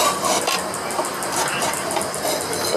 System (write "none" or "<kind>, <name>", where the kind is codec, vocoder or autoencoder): vocoder, BigVGAN v2